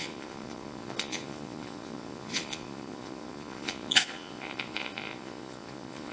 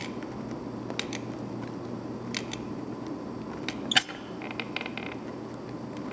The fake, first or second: first